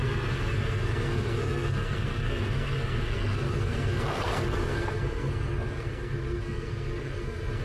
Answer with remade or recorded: remade